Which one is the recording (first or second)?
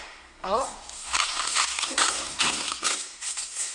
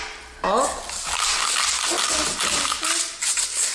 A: second